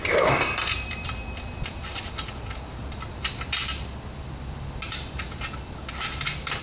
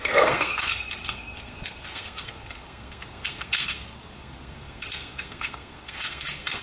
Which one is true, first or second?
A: first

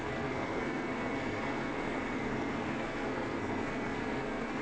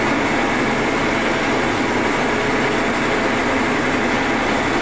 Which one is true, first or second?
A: second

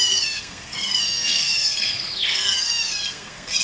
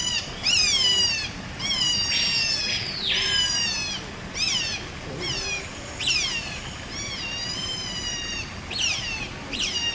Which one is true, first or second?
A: second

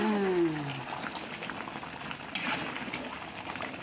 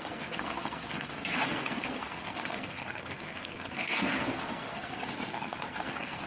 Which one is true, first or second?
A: first